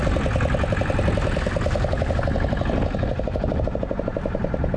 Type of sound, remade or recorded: recorded